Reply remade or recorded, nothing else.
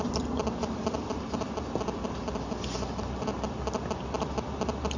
recorded